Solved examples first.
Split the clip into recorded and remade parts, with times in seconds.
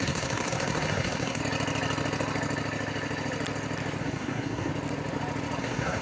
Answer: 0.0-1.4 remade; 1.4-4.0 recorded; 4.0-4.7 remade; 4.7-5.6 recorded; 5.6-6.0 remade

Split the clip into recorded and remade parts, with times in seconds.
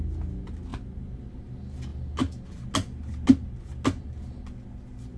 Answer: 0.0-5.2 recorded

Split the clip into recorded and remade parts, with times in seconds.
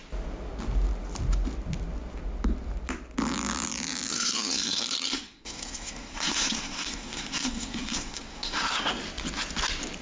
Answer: 0.0-4.1 recorded; 4.1-8.9 remade; 8.9-10.0 recorded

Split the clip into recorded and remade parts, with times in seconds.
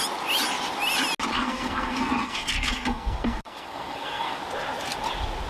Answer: 0.0-1.3 recorded; 1.3-4.4 remade; 4.4-5.5 recorded